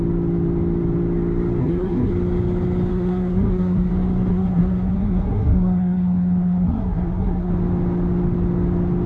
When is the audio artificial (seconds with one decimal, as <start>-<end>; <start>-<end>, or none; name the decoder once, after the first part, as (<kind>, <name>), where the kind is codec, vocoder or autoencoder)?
1.6-2.1 (codec, SNAC); 2.9-3.9; 4.3-7.5